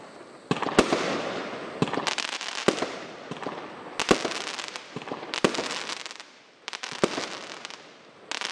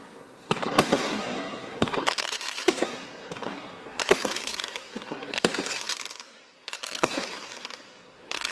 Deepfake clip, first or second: second